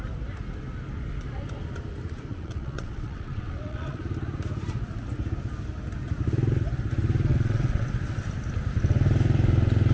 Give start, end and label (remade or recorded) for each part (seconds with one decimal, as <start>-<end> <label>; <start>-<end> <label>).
0.0-2.3 recorded; 2.3-4.0 remade; 4.0-7.3 recorded; 7.3-7.9 remade; 7.9-9.9 recorded

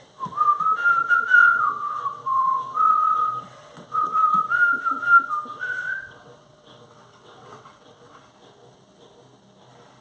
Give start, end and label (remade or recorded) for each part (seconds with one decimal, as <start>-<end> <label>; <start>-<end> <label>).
0.0-1.4 recorded; 1.4-4.2 remade; 4.2-5.5 recorded; 5.5-8.2 remade; 8.2-10.0 recorded